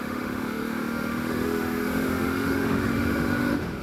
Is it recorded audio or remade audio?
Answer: remade